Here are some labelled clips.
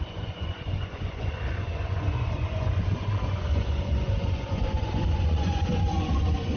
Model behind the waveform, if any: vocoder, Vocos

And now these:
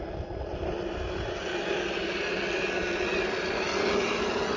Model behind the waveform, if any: none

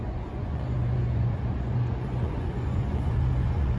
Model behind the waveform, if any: vocoder, Vocos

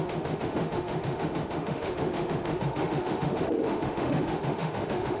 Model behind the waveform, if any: autoencoder, DAC-VAE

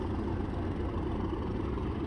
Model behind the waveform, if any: none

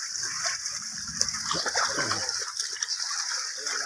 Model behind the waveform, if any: none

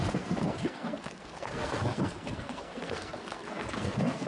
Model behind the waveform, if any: codec, SNAC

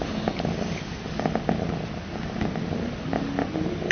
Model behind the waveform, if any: none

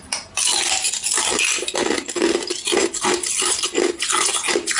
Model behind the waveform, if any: none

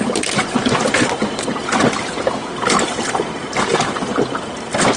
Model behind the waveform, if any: none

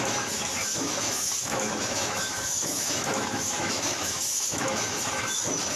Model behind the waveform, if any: autoencoder, DAC-VAE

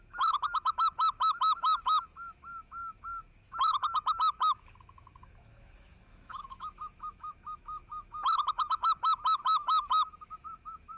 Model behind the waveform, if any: autoencoder, DAC-VAE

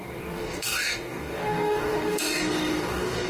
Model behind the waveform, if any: codec, DAC